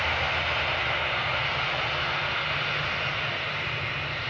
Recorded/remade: recorded